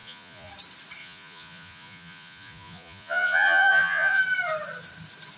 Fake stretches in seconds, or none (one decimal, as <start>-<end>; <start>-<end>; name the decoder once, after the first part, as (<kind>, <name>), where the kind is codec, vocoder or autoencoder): 0.0-0.5 (vocoder, Vocos); 1.0-4.2